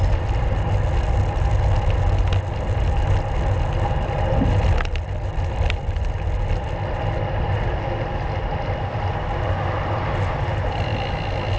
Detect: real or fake real